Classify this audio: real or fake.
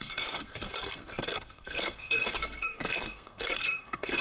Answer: fake